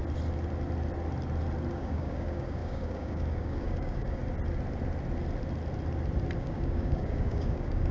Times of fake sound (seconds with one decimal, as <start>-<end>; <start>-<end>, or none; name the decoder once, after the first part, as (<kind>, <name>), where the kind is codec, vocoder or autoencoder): 1.7-4.2 (codec, DAC); 6.4-7.9